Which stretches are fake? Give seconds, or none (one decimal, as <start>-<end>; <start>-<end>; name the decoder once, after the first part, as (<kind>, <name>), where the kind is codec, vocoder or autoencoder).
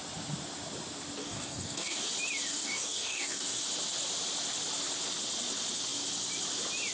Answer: 1.2-2.1 (codec, DAC); 2.5-3.6